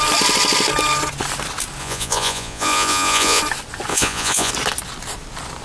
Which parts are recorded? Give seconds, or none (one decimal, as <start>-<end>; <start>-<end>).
0.0-1.8; 3.4-3.9; 4.5-5.6